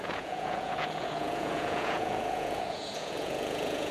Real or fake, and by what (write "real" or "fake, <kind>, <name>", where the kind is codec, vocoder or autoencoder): fake, vocoder, Vocos